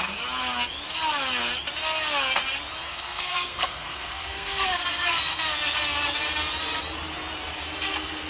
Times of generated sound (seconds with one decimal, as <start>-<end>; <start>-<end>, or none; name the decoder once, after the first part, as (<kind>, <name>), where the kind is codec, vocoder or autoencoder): 2.9-5.2 (codec, SNAC)